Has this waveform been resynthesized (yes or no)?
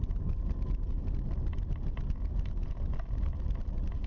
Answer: no